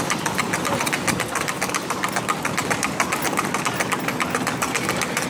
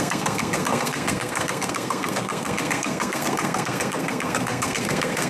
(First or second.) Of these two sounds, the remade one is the second